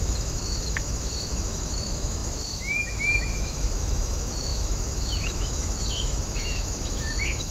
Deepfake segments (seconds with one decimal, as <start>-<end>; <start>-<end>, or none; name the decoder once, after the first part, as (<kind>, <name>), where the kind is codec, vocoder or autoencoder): 0.0-7.5 (autoencoder, DAC-VAE)